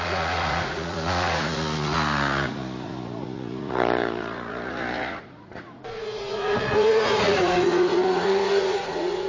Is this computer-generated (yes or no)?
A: yes